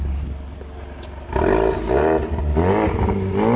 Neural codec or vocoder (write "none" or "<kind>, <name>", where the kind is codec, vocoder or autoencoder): none